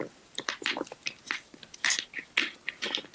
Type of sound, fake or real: real